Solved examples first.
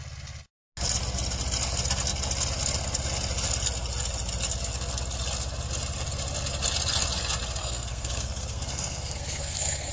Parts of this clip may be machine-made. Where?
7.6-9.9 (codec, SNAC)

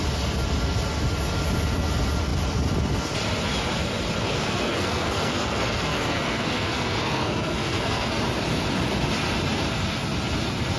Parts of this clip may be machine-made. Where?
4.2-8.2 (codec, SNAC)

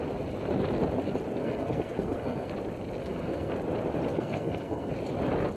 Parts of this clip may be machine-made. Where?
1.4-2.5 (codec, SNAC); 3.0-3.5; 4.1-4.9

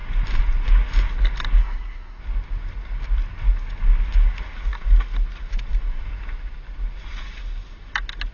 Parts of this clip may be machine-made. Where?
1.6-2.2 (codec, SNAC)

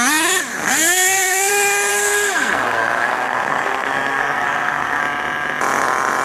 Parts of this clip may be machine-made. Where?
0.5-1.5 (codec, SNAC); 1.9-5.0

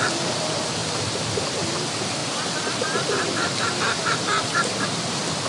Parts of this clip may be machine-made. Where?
none